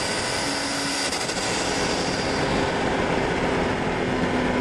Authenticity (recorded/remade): recorded